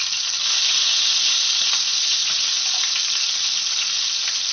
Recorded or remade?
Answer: recorded